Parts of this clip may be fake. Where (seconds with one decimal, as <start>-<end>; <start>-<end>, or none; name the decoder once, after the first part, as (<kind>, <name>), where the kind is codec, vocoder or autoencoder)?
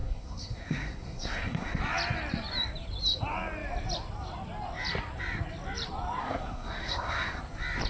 0.0-1.8 (codec, SNAC); 6.2-7.4